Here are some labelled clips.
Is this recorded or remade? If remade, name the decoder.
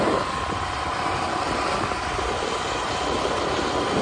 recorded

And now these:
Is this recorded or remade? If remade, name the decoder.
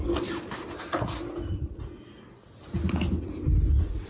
recorded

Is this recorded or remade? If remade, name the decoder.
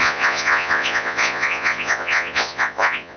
remade, vocoder, Vocos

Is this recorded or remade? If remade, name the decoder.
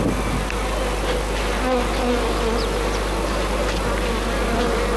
recorded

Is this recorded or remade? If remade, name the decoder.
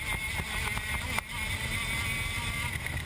recorded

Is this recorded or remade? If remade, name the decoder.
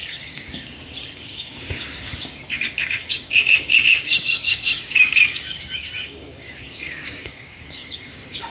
remade, codec, DAC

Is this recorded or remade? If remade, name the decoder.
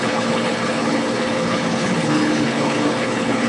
remade, codec, HILCodec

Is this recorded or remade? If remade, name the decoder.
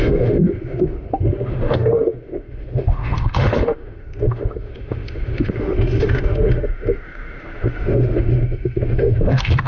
remade, autoencoder, DAC-VAE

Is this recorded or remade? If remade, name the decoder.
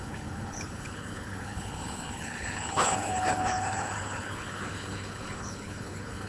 remade, codec, HILCodec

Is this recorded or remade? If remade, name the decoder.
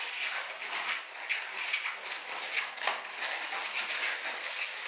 recorded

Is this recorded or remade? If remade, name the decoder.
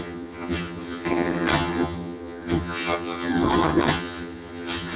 remade, vocoder, HiFi-GAN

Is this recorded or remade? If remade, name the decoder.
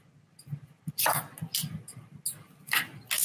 recorded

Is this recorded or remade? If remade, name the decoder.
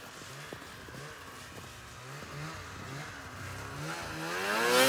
recorded